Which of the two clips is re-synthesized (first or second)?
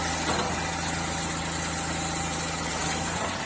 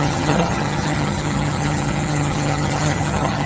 second